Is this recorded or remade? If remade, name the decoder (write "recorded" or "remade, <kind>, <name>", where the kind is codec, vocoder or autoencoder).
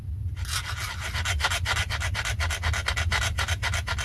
recorded